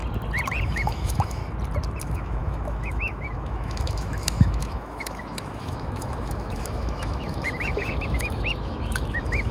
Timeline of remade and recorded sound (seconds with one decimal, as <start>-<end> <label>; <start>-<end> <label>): 0.0-0.6 recorded; 0.6-1.4 remade; 1.4-2.0 recorded; 2.0-9.5 remade